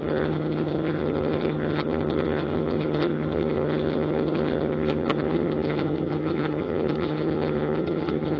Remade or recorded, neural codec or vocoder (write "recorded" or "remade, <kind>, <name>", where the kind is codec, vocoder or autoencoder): remade, vocoder, HiFi-GAN